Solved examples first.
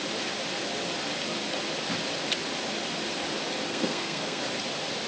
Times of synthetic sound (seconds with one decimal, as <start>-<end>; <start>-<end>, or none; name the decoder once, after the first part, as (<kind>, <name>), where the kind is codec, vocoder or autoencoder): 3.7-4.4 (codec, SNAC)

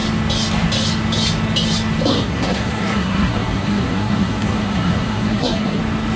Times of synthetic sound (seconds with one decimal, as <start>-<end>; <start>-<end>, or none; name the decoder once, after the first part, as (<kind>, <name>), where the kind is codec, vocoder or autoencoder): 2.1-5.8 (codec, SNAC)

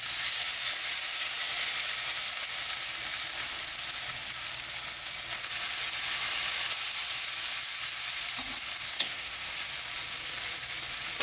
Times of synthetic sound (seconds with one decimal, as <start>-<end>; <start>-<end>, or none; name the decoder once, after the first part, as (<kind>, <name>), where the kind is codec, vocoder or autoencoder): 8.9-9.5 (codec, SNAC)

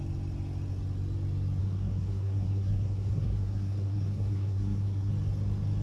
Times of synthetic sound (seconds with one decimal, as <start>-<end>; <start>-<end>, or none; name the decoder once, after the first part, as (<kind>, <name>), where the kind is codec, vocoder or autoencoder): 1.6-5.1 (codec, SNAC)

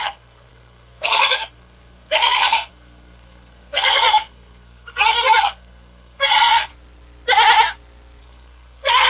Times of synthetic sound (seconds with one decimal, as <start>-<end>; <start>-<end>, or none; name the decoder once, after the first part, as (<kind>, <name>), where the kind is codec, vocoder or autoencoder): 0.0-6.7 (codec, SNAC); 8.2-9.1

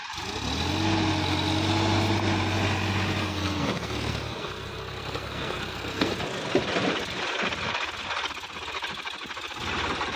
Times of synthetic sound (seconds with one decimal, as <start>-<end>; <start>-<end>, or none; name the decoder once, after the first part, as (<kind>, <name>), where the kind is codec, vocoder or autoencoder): 3.2-6.1 (codec, SNAC)

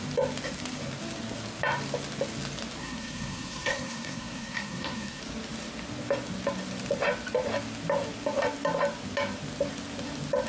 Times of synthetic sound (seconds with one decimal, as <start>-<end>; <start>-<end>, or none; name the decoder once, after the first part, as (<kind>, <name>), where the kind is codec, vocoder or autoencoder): 2.8-5.2 (codec, SNAC)

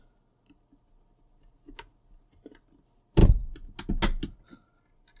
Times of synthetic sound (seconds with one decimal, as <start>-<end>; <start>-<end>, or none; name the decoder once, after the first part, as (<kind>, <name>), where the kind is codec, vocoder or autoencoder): none